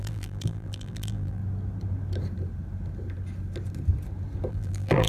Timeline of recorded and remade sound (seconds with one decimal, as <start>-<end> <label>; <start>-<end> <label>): 0.0-1.4 remade; 1.4-4.5 recorded; 4.5-5.1 remade